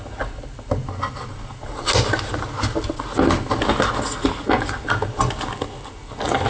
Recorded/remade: recorded